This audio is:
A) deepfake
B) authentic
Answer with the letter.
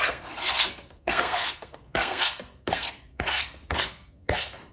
A